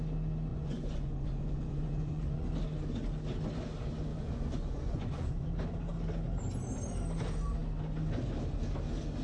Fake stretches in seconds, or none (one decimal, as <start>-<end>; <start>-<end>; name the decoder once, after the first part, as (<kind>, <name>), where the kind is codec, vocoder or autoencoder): 0.5-2.5 (vocoder, Vocos); 4.1-5.5

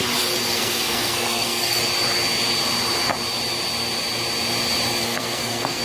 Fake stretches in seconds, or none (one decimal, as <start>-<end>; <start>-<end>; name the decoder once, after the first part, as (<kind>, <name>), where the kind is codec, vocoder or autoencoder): 0.5-1.8 (codec, SNAC); 5.0-5.8